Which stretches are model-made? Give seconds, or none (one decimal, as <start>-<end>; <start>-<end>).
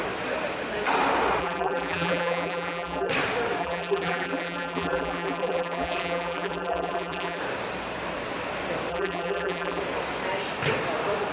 1.4-3.1; 3.6-7.4; 8.9-9.8